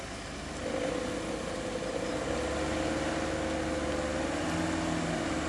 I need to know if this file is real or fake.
real